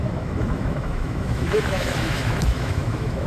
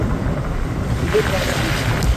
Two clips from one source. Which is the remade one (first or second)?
first